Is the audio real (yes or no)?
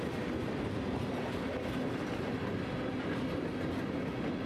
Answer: yes